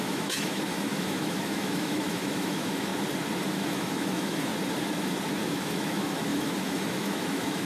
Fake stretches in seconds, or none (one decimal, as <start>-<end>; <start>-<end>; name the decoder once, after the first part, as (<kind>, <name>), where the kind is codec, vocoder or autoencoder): 0.0-2.9 (autoencoder, DAC-VAE); 3.4-4.5; 5.5-7.7

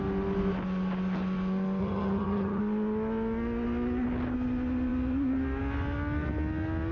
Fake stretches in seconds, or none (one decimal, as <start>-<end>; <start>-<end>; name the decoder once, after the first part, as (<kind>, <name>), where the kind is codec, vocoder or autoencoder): 1.8-2.6 (vocoder, HiFi-GAN)